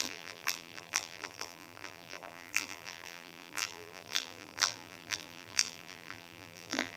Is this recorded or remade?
remade